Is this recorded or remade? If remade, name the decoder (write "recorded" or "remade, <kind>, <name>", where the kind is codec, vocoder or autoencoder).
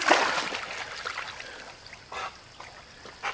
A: recorded